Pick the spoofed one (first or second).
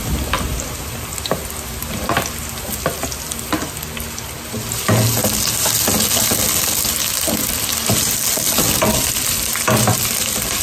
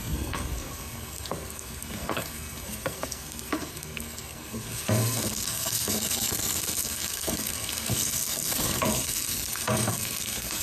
second